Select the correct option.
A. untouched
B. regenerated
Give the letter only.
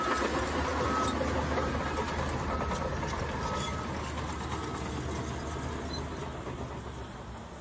A